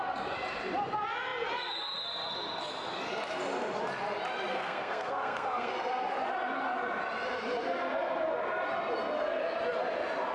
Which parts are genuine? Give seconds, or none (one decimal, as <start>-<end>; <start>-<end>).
0.0-4.5; 5.7-10.3